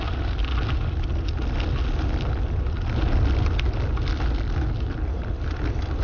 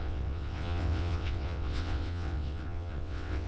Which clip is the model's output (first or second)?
second